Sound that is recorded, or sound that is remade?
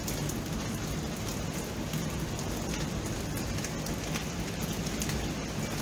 recorded